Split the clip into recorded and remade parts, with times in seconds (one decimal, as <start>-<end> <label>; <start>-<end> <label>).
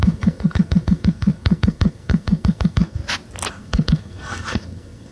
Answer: 0.0-3.0 remade; 3.0-3.5 recorded; 3.5-5.1 remade